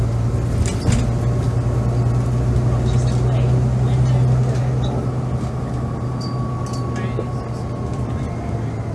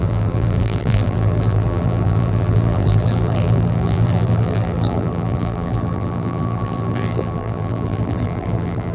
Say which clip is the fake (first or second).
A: second